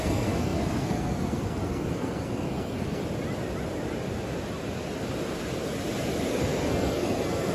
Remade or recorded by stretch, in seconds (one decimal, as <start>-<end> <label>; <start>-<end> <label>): 0.0-3.0 remade; 3.0-6.3 recorded; 6.3-7.5 remade